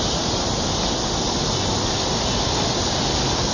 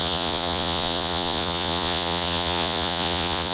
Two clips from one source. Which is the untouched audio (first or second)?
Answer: first